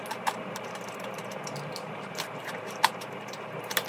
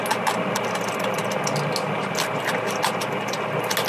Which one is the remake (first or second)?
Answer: first